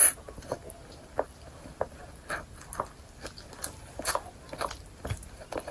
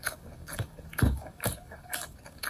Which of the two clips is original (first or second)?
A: first